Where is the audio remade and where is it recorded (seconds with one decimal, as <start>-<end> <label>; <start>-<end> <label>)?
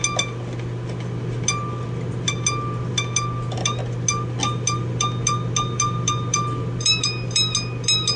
0.0-8.2 recorded